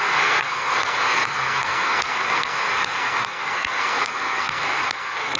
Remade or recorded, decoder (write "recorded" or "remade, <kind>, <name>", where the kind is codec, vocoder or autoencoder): remade, codec, SNAC